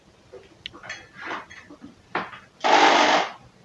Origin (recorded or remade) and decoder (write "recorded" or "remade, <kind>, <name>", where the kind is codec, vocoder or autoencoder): recorded